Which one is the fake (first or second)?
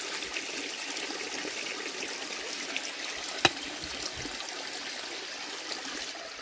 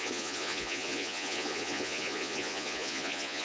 second